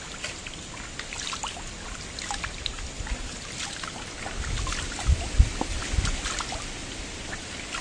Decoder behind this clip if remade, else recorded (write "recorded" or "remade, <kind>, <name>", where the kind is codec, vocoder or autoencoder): recorded